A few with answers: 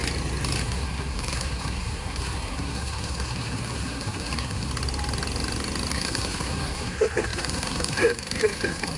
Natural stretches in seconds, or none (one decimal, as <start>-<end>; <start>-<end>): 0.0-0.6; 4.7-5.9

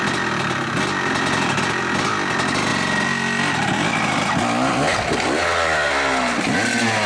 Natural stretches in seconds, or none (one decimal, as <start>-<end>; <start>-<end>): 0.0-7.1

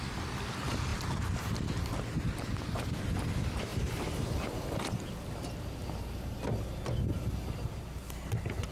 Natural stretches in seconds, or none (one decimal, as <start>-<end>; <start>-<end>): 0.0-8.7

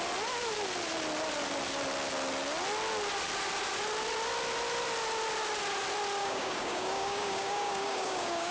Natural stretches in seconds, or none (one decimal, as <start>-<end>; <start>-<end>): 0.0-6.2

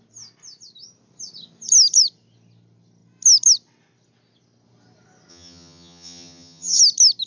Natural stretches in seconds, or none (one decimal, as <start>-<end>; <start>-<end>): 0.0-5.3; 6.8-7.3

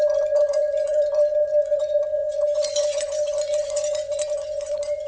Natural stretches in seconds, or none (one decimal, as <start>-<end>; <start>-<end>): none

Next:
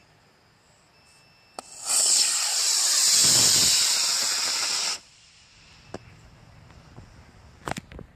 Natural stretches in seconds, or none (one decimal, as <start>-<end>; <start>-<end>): 0.0-3.2